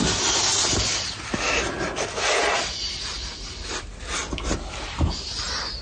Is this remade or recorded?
recorded